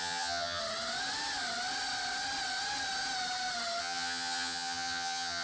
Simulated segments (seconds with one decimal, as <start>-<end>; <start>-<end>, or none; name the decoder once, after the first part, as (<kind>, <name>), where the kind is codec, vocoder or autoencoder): 0.0-0.6 (vocoder, HiFi-GAN); 3.8-5.4

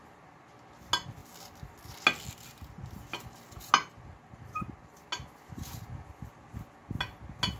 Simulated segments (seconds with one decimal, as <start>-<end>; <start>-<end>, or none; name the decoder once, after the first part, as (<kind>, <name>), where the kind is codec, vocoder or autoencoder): none